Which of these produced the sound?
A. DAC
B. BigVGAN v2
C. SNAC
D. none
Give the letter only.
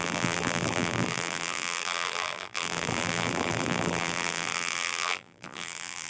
B